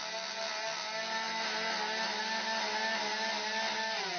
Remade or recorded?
recorded